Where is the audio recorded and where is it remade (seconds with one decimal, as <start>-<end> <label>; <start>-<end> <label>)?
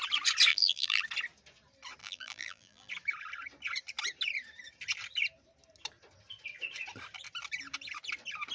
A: 0.0-0.5 recorded; 0.5-1.0 remade; 1.0-2.0 recorded; 2.0-2.9 remade; 2.9-8.5 recorded